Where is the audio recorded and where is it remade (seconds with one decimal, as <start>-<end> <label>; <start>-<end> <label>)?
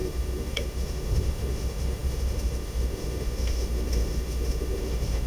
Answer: 0.0-5.3 remade